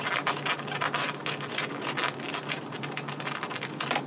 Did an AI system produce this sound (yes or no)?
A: no